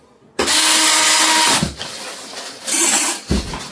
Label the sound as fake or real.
real